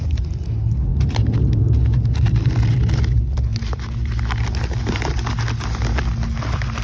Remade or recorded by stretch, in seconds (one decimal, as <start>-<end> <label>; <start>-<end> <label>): 0.0-6.8 recorded